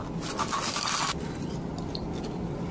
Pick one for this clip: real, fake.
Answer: real